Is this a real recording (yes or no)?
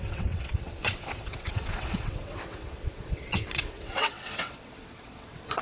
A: no